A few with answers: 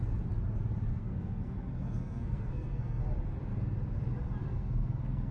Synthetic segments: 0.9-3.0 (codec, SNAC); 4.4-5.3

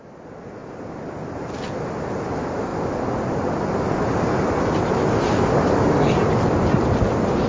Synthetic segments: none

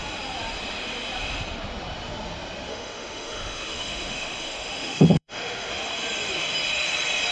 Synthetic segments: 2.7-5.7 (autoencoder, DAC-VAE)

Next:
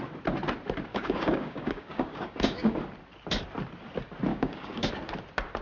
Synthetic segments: 0.9-2.8 (codec, DAC); 4.3-4.9